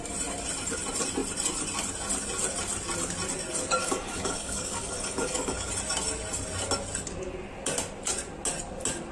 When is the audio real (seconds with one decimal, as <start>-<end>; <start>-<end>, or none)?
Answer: 0.0-3.8; 5.7-9.1